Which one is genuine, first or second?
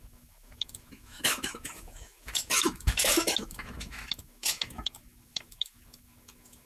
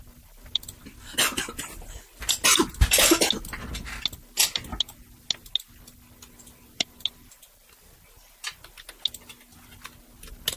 second